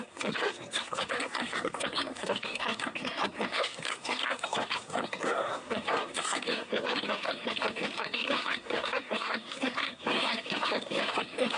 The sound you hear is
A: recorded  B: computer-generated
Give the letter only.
B